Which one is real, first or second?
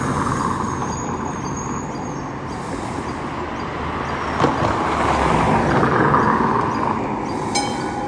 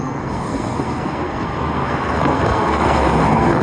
first